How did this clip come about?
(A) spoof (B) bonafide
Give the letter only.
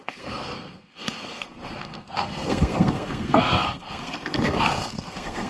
A